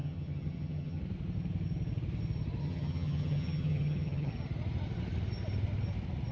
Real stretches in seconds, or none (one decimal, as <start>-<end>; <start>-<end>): 1.0-2.6; 4.3-6.3